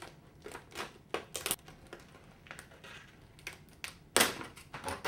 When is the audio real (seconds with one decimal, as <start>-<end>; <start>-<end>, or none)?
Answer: 0.0-5.1